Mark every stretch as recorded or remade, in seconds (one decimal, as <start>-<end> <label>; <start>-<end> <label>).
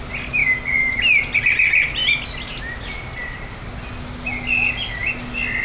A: 0.0-5.6 recorded